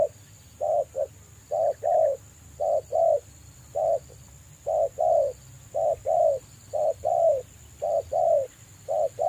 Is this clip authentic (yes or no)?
no